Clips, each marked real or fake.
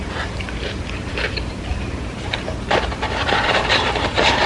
fake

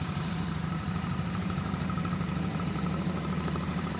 fake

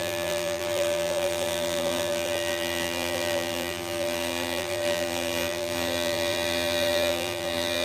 fake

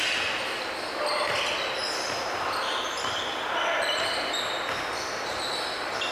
real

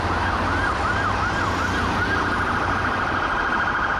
real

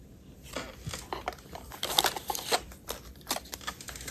fake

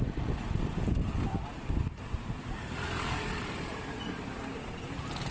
fake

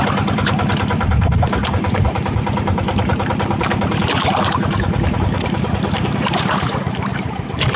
fake